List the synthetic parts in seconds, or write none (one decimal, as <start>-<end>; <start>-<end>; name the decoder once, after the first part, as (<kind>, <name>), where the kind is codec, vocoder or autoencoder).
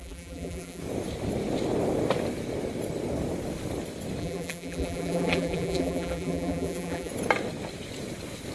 0.0-0.8 (vocoder, BigVGAN v2); 4.2-7.1